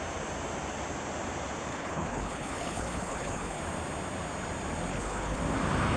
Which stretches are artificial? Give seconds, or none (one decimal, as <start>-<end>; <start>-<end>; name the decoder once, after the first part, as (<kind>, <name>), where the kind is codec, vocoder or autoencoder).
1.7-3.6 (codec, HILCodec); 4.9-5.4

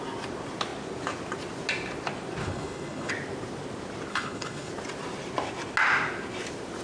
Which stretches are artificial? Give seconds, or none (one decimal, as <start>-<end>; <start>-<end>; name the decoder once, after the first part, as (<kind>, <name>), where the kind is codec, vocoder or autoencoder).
2.4-3.1 (codec, HILCodec); 4.1-4.7

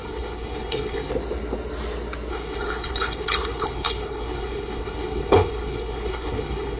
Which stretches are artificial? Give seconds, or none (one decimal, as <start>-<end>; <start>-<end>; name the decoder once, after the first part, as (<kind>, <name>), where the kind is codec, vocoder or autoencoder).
0.0-1.1 (codec, HILCodec); 2.3-6.8

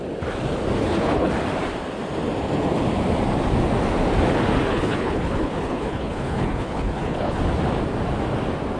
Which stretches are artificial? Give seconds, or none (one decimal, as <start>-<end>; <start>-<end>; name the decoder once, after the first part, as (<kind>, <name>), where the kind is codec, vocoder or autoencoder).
0.8-1.3 (codec, HILCodec); 4.7-7.4

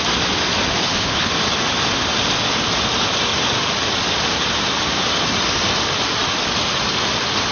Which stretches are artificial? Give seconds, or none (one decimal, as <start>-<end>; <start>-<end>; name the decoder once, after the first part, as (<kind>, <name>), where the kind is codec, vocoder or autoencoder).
0.8-1.3 (codec, HILCodec)